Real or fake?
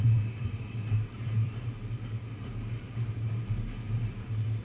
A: fake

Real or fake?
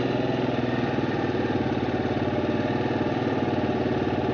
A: real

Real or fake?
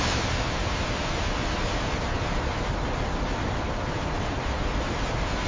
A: real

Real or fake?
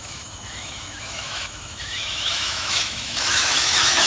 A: fake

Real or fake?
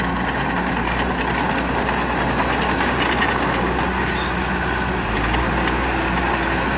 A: real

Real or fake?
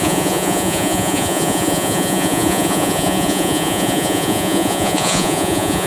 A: fake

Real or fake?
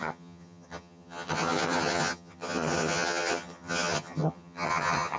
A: fake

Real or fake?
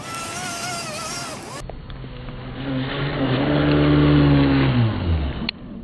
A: real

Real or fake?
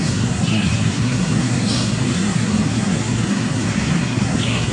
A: fake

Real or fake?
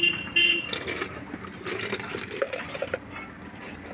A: real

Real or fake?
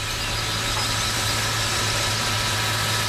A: real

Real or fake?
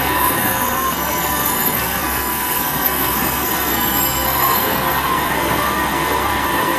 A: fake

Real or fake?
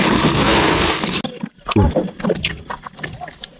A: real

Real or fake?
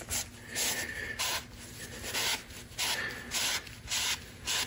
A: real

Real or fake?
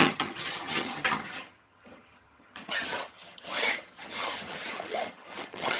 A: fake